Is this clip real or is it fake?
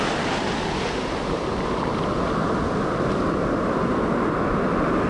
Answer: real